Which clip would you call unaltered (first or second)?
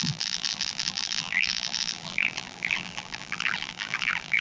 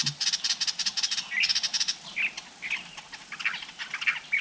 second